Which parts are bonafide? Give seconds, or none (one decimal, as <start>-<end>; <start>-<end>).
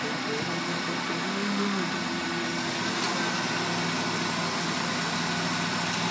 0.0-1.3; 1.8-6.1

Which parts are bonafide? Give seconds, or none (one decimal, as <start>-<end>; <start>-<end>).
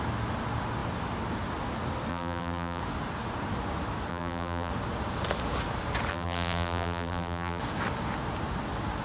0.0-2.1; 2.8-4.1; 4.7-6.1; 7.6-9.0